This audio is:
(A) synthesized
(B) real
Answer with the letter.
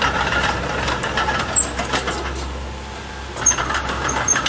B